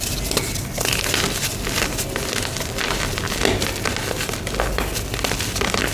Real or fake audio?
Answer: real